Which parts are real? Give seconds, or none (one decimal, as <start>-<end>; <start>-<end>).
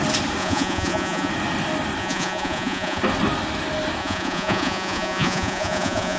0.0-0.4; 1.3-2.0; 3.0-4.0